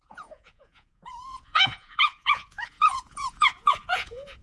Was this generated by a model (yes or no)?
yes